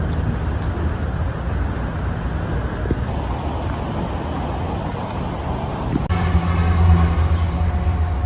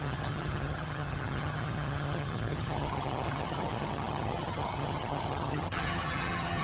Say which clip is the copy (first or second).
second